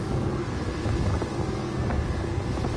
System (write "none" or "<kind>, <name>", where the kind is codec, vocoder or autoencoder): none